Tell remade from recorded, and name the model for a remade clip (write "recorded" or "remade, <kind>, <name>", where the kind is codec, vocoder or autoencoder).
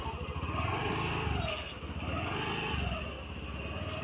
recorded